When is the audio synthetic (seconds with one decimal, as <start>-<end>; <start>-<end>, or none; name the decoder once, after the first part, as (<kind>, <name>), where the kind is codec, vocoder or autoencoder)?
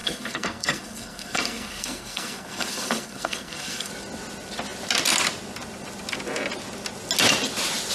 0.0-3.9 (codec, SNAC)